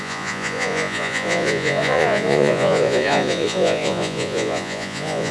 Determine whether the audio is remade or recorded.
remade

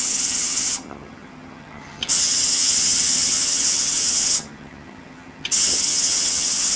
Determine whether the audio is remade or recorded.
remade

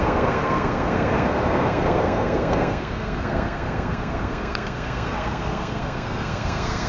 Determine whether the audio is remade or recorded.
remade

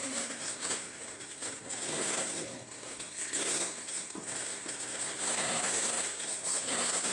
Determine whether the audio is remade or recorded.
remade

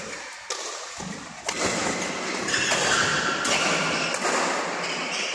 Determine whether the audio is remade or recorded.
recorded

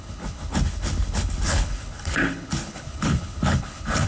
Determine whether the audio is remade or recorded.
remade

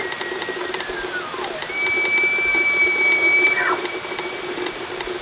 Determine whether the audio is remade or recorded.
recorded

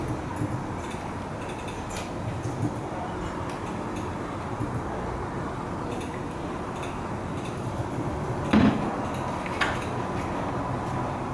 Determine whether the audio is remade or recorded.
recorded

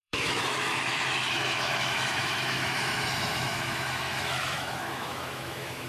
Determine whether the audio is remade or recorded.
remade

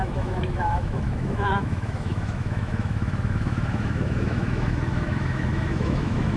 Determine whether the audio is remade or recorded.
remade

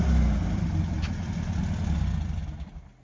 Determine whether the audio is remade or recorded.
recorded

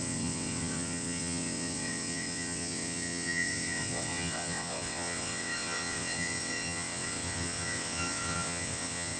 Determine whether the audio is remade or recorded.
remade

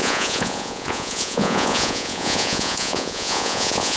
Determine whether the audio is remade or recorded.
remade